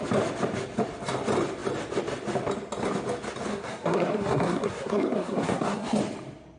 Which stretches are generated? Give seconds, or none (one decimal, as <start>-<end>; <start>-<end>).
3.5-6.0